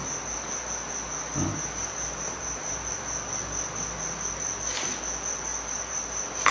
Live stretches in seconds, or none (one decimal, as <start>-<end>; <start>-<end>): 0.0-1.5; 2.9-6.5